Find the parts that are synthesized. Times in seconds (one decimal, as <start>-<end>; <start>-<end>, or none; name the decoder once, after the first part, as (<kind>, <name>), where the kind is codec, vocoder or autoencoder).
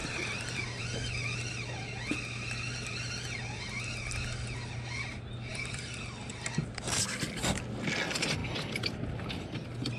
0.0-0.8 (vocoder, BigVGAN v2); 5.5-6.3